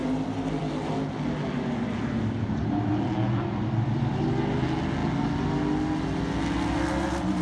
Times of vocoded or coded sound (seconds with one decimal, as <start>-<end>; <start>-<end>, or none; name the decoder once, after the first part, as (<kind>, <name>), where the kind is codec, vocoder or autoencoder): 2.9-4.3 (vocoder, BigVGAN v2)